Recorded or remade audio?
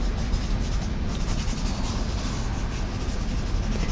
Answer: recorded